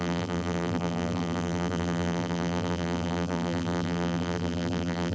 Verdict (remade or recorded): remade